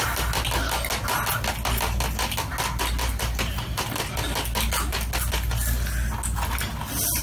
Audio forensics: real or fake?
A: real